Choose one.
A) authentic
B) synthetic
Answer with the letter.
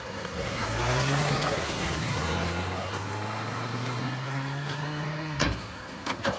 B